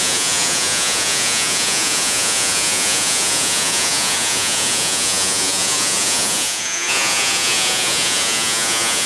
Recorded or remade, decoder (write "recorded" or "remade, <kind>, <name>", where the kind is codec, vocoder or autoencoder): remade, vocoder, Vocos